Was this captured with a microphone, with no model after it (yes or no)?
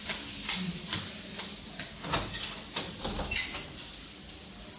yes